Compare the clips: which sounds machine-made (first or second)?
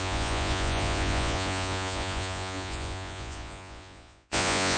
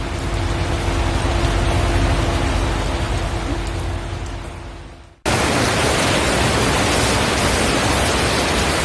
first